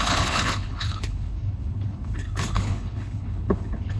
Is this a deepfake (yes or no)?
yes